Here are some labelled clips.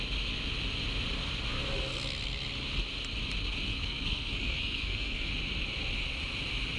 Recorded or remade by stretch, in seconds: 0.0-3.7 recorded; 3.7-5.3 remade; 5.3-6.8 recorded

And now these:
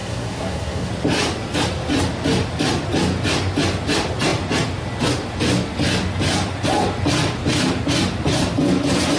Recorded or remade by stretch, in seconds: 0.0-0.9 remade; 0.9-9.2 recorded